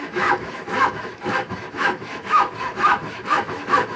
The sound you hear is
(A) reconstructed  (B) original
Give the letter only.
A